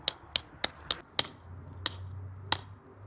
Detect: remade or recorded recorded